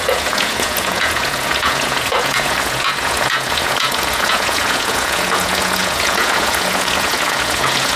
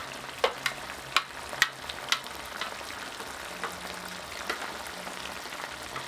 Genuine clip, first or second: second